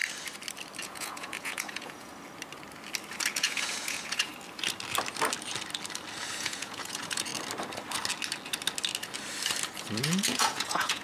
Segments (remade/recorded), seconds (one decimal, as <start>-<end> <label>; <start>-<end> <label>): 0.0-0.8 recorded; 0.8-2.1 remade; 2.1-3.3 recorded; 3.3-4.3 remade; 4.3-6.4 recorded; 6.4-7.3 remade; 7.3-10.0 recorded; 10.0-11.0 remade